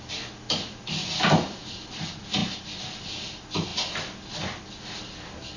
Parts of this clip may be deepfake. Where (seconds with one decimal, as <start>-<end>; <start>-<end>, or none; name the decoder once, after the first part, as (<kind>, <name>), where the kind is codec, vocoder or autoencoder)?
none